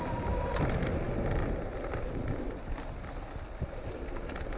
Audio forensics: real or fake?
real